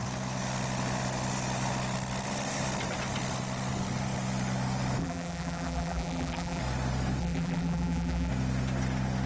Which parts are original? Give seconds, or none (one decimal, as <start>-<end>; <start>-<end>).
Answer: 0.0-5.0; 6.6-7.2; 8.3-9.3